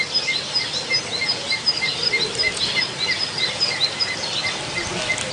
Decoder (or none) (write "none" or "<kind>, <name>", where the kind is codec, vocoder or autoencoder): none